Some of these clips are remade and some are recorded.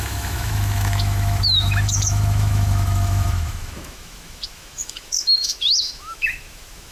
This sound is remade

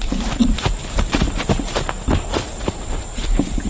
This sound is remade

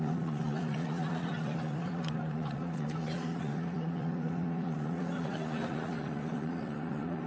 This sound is remade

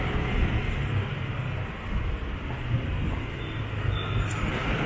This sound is recorded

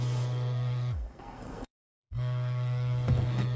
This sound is remade